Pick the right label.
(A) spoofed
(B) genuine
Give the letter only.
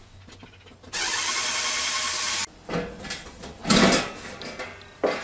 B